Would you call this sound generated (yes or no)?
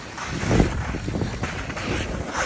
yes